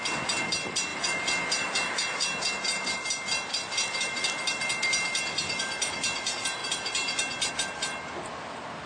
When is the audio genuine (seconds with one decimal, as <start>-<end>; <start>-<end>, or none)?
0.0-8.9